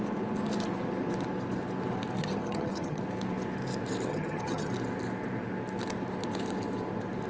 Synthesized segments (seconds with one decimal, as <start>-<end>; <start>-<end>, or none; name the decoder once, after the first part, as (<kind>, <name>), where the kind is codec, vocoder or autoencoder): 2.2-3.0 (vocoder, HiFi-GAN); 4.1-4.7